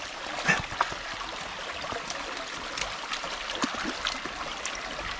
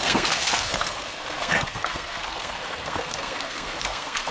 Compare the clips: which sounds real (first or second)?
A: first